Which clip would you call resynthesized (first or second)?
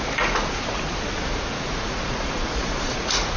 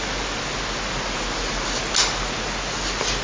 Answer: first